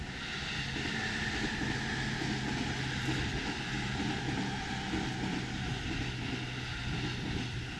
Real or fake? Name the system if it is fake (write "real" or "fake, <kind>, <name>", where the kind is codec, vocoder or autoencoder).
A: real